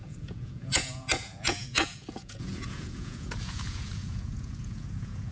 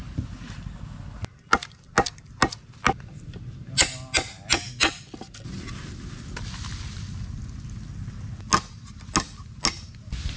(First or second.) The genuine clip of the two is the second